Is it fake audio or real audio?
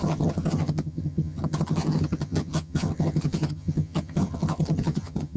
fake